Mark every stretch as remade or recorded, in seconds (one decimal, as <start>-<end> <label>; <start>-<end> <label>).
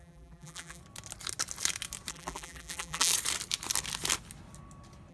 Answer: 0.0-0.8 remade; 0.8-2.1 recorded; 2.1-3.1 remade; 3.1-5.1 recorded